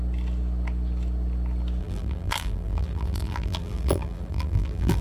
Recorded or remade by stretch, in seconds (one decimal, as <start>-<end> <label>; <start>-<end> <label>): 0.0-1.8 recorded; 1.8-5.0 remade